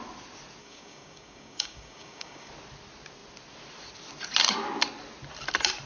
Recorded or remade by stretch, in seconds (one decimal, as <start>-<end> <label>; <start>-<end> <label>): 0.0-0.6 recorded; 0.6-2.5 remade; 2.5-5.9 recorded